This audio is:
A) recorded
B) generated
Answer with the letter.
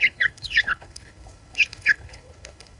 B